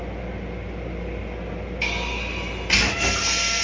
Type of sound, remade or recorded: recorded